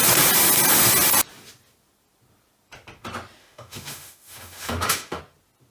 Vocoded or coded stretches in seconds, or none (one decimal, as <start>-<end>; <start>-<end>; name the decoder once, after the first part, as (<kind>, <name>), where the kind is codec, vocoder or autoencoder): 3.4-5.2 (autoencoder, DAC-VAE)